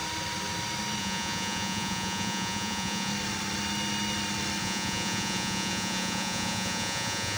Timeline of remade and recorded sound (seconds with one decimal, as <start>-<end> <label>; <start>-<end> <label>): 0.0-1.0 recorded; 1.0-3.1 remade; 3.1-4.6 recorded; 4.6-7.4 remade